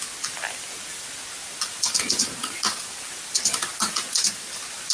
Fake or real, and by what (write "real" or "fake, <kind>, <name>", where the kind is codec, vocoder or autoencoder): real